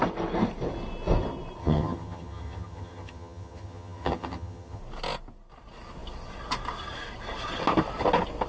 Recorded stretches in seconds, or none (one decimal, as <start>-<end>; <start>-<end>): 0.0-1.6; 4.8-8.5

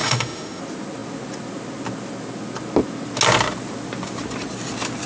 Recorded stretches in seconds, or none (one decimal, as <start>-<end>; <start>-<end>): 0.6-5.1

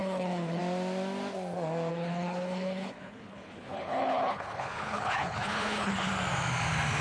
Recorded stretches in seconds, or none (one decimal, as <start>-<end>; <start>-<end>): 0.6-1.9; 6.1-7.0

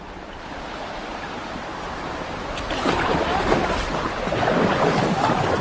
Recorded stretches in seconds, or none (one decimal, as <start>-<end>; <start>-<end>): 0.0-1.1; 4.5-5.6

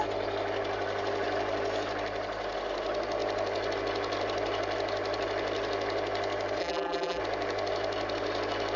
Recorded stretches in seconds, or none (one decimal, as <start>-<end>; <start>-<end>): 0.0-6.6; 7.2-8.8